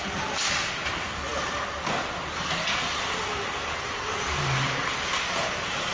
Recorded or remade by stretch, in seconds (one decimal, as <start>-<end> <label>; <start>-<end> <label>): 0.0-5.9 recorded